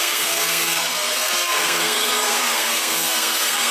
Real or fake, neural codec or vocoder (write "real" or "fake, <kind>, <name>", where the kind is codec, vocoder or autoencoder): fake, codec, SNAC